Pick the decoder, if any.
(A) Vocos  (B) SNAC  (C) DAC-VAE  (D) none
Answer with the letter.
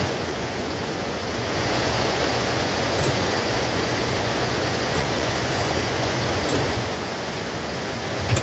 A